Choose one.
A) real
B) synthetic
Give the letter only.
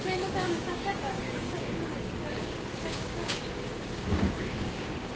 B